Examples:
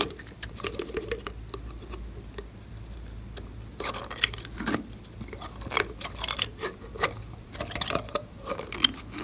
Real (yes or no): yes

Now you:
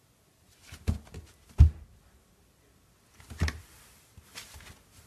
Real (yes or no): yes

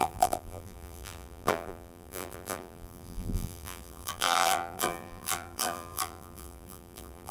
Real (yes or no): no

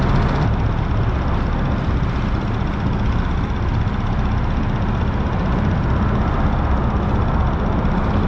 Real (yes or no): yes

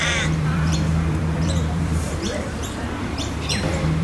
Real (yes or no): no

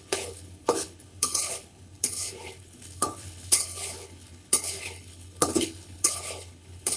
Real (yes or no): no